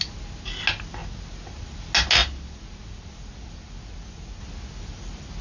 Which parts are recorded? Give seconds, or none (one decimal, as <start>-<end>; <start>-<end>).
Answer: 0.0-5.4